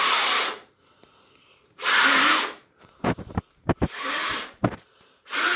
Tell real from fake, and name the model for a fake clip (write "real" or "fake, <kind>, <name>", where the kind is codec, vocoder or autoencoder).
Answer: fake, vocoder, BigVGAN v2